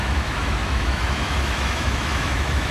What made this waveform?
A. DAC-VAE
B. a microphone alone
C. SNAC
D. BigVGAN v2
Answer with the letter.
A